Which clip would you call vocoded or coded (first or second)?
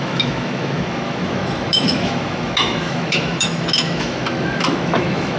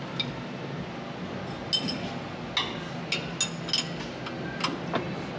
first